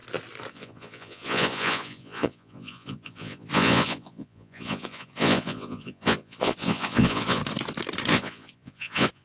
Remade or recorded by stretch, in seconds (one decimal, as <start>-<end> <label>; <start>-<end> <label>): 0.0-0.5 recorded; 0.5-7.4 remade; 7.4-8.1 recorded; 8.1-9.2 remade